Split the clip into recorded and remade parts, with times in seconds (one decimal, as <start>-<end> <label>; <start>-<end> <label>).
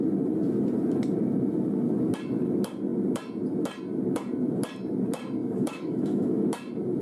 0.0-5.4 recorded; 5.4-6.4 remade; 6.4-7.0 recorded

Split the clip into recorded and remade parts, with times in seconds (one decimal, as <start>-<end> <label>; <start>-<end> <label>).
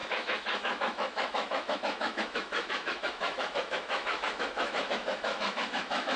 0.0-6.2 remade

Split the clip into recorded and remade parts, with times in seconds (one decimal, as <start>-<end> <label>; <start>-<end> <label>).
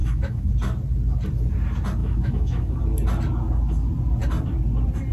0.0-0.5 remade; 0.5-2.0 recorded; 2.0-2.8 remade; 2.8-5.1 recorded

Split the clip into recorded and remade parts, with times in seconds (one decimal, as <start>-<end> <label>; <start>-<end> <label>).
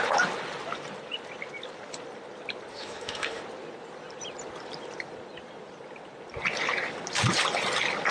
0.0-2.7 recorded; 2.7-3.4 remade; 3.4-8.1 recorded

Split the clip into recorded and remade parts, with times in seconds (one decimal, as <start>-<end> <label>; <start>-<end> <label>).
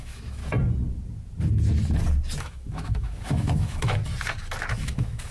0.0-0.4 remade; 0.4-2.4 recorded; 2.4-4.0 remade; 4.0-4.7 recorded; 4.7-5.3 remade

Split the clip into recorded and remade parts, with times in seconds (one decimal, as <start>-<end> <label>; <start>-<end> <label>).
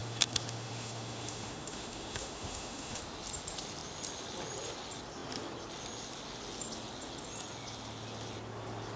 0.0-3.0 remade; 3.0-9.0 recorded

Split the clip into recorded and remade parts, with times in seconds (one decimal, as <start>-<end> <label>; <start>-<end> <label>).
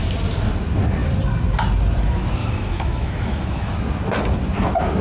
0.0-2.4 recorded; 2.4-3.7 remade; 3.7-5.0 recorded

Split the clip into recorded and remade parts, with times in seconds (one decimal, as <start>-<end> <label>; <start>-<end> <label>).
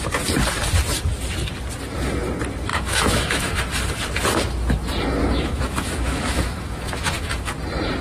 0.0-2.7 recorded; 2.7-3.6 remade; 3.6-5.2 recorded; 5.2-7.5 remade; 7.5-8.0 recorded